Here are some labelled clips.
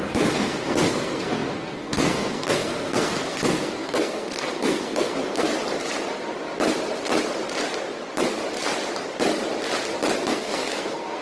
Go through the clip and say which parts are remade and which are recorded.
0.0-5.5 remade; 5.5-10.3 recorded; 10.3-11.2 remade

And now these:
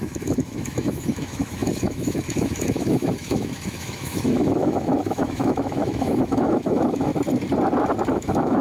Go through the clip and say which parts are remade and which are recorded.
0.0-7.1 remade; 7.1-8.1 recorded; 8.1-8.6 remade

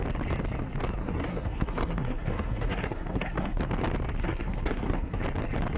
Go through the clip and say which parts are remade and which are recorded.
0.0-1.0 recorded; 1.0-3.6 remade; 3.6-4.2 recorded; 4.2-5.2 remade; 5.2-5.8 recorded

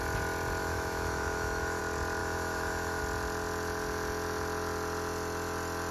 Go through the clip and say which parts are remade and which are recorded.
0.0-0.6 recorded; 0.6-1.8 remade; 1.8-2.2 recorded; 2.2-3.0 remade; 3.0-5.9 recorded

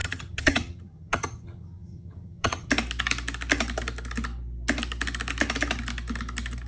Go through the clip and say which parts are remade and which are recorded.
0.0-2.7 remade; 2.7-6.7 recorded

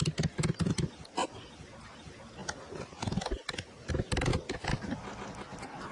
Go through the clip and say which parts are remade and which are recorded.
0.0-5.9 recorded

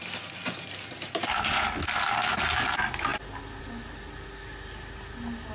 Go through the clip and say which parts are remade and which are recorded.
0.0-5.5 recorded

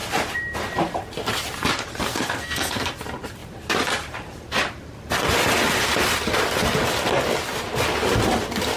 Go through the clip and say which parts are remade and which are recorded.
0.0-2.1 recorded; 2.1-2.9 remade; 2.9-8.8 recorded